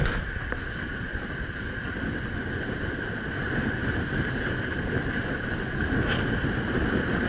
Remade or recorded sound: recorded